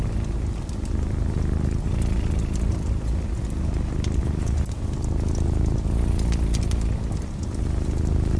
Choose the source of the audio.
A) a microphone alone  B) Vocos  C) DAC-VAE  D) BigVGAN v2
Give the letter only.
A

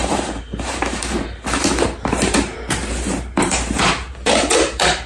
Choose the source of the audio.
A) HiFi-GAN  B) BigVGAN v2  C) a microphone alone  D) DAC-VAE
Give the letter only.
B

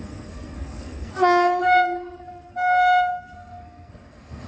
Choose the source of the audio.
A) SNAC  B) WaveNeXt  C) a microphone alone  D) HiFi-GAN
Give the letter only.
A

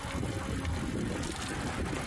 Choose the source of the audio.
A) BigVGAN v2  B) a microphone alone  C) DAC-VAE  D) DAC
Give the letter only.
B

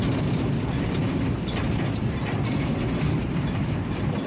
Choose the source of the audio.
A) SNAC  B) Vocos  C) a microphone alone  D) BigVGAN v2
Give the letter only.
C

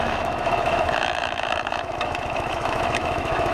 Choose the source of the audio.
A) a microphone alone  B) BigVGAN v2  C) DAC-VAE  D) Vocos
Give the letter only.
C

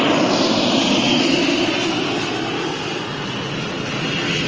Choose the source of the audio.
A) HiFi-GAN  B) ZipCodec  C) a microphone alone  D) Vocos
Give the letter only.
C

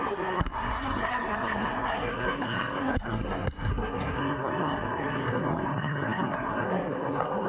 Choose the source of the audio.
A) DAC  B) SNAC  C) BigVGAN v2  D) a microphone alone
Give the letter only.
B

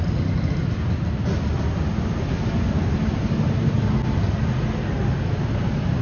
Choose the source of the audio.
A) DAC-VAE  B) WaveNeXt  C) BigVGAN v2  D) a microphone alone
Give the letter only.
D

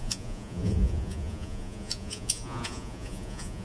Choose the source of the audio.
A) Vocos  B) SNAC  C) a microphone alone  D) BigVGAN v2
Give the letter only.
A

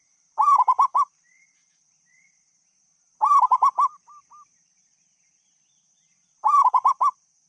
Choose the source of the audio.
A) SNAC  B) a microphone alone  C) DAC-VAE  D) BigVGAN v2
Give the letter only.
D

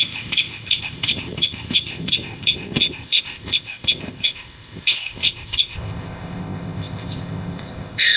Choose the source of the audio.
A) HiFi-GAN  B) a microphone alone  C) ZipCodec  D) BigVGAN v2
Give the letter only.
C